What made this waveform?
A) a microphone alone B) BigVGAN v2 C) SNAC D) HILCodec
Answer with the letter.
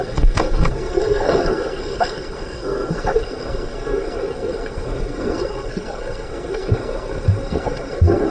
C